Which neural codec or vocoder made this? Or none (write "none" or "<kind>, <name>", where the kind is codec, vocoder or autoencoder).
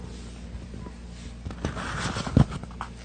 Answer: none